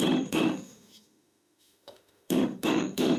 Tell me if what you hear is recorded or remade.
remade